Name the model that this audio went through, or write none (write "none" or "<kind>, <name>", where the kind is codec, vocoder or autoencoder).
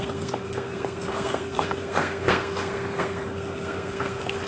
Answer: codec, SNAC